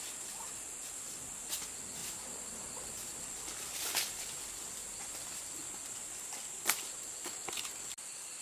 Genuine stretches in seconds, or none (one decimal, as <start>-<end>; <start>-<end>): 0.0-8.4